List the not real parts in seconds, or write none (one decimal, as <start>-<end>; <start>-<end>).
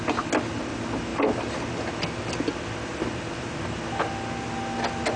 1.1-2.2; 2.9-3.4